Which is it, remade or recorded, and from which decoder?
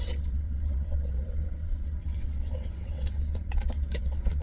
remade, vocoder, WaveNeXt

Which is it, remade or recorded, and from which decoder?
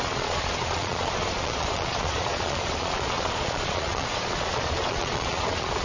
remade, vocoder, Vocos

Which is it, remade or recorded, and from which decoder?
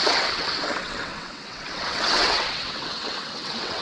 remade, vocoder, WaveNeXt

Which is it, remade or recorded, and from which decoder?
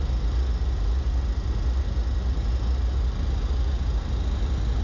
recorded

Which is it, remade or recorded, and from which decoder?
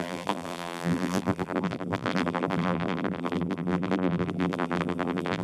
remade, vocoder, BigVGAN v2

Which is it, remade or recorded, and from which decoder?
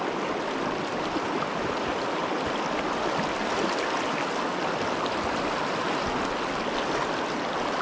recorded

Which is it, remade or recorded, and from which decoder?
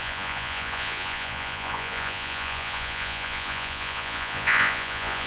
remade, vocoder, Vocos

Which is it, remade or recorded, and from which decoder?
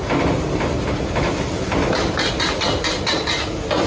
recorded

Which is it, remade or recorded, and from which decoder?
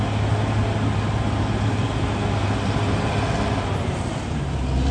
recorded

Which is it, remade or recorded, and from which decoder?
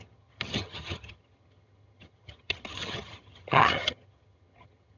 remade, vocoder, HiFi-GAN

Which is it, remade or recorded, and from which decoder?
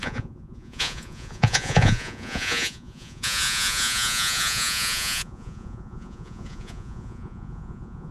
remade, vocoder, Vocos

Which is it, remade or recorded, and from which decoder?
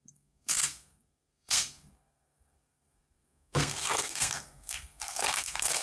remade, codec, SNAC